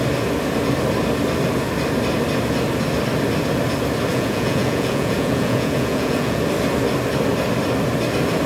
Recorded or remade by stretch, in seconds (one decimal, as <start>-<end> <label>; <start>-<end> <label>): 0.0-4.1 recorded; 4.1-6.4 remade; 6.4-8.5 recorded